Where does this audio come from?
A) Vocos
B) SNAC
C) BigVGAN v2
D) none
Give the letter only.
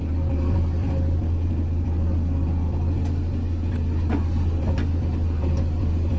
D